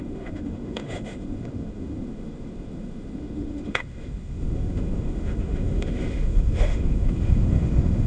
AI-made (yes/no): yes